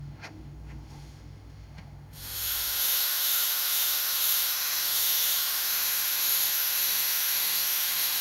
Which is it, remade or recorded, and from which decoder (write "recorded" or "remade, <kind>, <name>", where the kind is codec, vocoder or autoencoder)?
remade, autoencoder, DAC-VAE